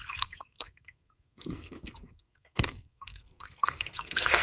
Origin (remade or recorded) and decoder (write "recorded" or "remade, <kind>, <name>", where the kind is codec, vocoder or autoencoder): remade, codec, SNAC